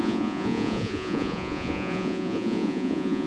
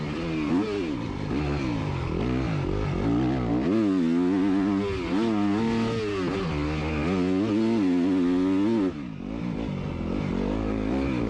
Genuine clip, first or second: second